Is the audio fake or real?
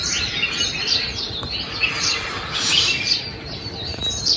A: real